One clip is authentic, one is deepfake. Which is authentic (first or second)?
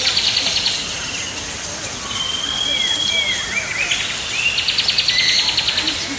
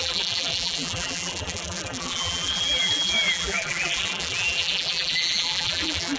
first